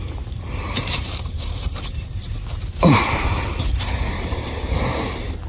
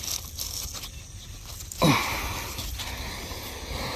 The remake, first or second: first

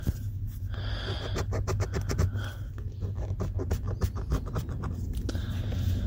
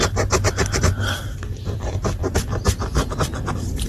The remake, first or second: second